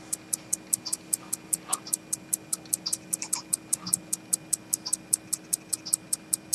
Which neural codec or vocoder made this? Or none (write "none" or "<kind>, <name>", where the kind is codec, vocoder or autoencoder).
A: none